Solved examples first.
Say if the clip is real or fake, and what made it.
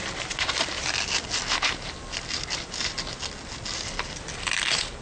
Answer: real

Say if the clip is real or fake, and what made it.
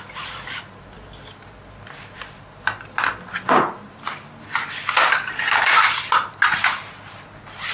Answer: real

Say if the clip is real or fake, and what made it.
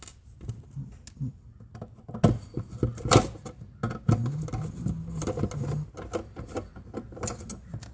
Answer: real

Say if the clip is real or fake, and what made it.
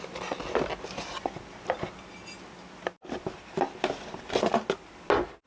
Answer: real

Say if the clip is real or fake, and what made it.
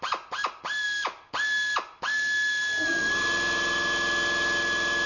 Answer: real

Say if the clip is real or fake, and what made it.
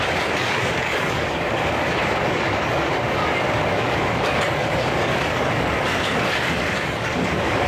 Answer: fake, codec, DAC